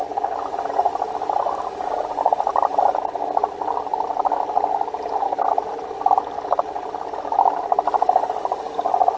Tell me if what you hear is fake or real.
real